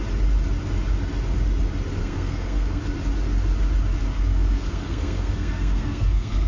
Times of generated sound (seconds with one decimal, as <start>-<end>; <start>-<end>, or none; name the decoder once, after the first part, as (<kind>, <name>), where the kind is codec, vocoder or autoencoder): 2.0-2.8 (codec, SNAC); 4.1-6.5